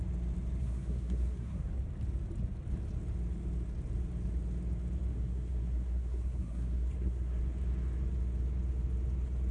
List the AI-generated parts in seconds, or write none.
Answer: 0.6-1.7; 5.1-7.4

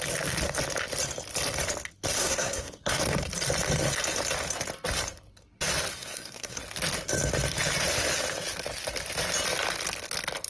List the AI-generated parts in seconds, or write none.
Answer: 2.2-3.0; 5.9-6.6